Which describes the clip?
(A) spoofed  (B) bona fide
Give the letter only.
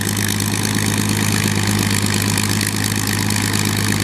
B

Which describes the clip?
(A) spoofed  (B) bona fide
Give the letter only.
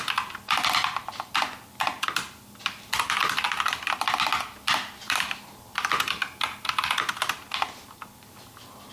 B